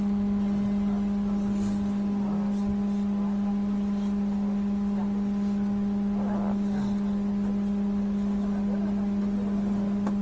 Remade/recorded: recorded